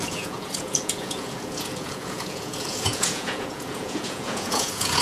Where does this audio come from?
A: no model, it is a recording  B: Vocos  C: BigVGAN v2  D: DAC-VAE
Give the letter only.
B